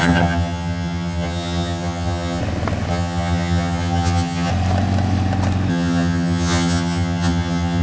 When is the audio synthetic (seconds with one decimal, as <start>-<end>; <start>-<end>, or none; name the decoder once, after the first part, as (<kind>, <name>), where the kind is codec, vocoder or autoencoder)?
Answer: 0.0-2.4 (vocoder, HiFi-GAN); 2.9-4.5; 5.7-7.8